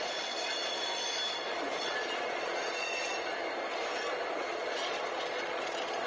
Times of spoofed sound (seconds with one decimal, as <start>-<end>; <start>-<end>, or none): 0.0-0.8; 1.8-3.1; 4.4-6.1

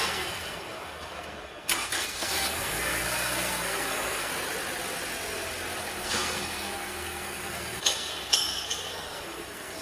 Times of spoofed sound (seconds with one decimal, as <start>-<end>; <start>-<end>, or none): 0.0-4.3; 6.0-9.8

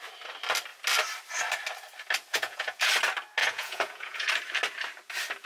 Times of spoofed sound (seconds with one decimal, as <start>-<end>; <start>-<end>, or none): 2.3-2.9; 3.4-4.3

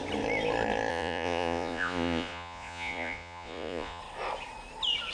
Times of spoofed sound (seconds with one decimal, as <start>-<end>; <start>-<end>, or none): 0.9-4.0

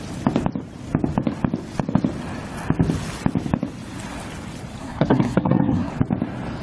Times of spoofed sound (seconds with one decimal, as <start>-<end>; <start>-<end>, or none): 4.8-5.9

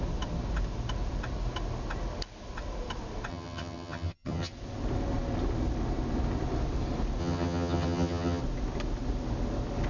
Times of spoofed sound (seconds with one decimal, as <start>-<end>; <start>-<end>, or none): 3.3-4.5; 7.2-8.4